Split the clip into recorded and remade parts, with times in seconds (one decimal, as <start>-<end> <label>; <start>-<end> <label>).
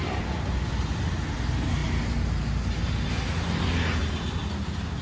0.0-5.0 recorded